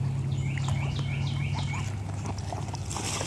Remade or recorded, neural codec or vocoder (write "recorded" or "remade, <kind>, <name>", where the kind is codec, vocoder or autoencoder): recorded